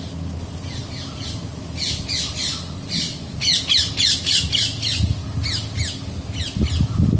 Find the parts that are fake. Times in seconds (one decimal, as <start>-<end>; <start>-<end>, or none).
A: 2.5-3.6